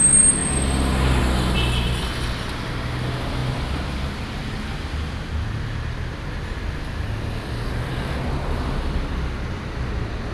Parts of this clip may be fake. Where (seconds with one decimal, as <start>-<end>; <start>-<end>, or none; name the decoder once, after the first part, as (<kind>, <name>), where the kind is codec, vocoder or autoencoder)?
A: 3.4-3.9 (vocoder, BigVGAN v2)